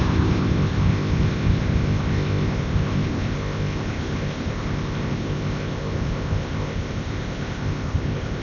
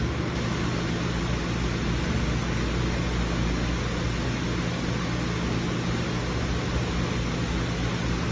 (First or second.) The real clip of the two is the second